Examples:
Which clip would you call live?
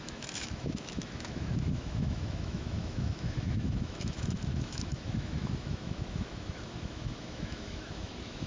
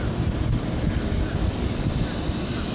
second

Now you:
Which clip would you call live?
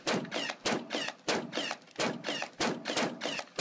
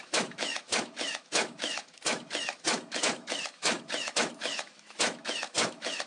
first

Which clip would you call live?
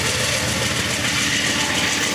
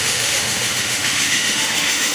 first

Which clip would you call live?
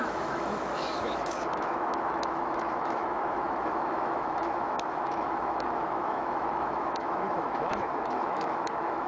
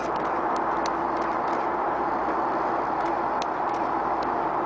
second